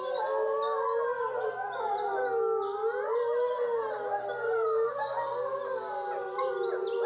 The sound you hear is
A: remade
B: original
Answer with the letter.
B